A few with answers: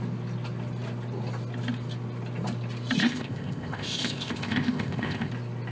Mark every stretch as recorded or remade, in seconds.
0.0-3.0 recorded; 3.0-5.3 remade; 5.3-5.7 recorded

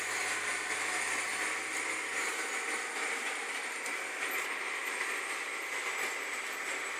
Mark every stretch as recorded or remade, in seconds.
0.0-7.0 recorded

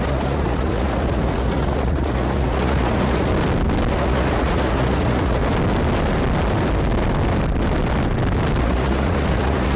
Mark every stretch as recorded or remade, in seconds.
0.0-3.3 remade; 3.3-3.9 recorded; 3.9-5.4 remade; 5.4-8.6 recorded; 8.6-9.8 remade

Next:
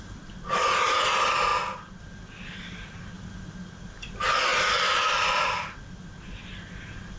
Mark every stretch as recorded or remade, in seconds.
0.0-7.2 recorded

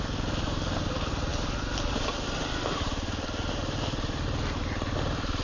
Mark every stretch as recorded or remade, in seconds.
0.0-5.4 recorded

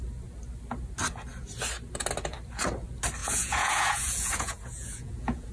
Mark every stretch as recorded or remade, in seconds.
0.0-3.2 recorded; 3.2-5.5 remade

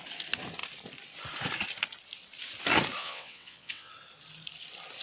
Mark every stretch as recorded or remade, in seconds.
0.0-3.0 recorded; 3.0-3.9 remade; 3.9-5.0 recorded

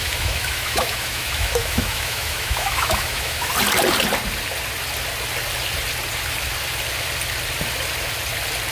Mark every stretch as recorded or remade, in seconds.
0.0-3.5 remade; 3.5-8.7 recorded